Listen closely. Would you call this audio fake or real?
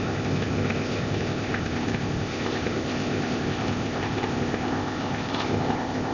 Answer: fake